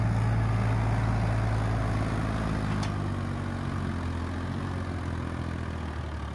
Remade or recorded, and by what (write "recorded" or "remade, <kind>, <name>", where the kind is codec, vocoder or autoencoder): recorded